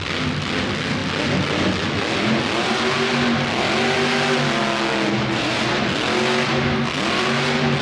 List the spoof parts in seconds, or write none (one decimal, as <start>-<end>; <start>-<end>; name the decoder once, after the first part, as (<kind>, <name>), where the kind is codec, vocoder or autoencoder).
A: none